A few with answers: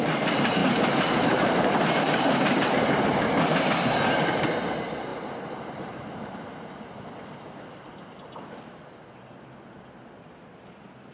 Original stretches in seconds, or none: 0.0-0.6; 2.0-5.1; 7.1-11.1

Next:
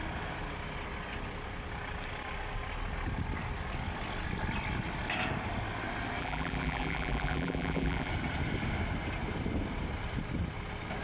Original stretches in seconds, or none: 0.0-6.2; 8.1-11.0

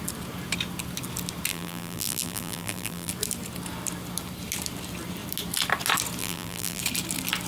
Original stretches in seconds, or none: 0.0-1.5; 3.1-6.2; 6.8-7.5